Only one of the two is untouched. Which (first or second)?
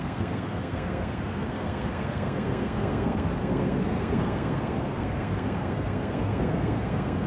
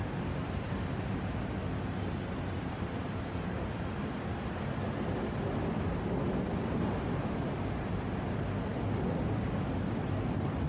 second